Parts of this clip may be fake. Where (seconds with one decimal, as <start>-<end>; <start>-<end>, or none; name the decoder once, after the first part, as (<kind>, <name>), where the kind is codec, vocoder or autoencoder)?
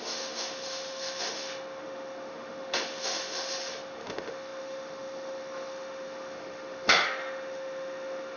0.0-8.4 (autoencoder, DAC-VAE)